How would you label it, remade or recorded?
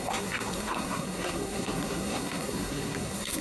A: remade